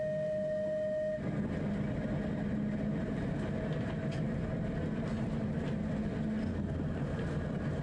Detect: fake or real real